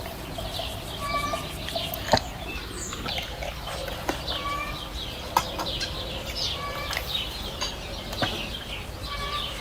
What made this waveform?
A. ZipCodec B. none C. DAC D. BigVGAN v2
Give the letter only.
B